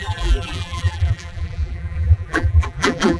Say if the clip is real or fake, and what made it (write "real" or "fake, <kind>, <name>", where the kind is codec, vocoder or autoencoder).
fake, vocoder, BigVGAN v2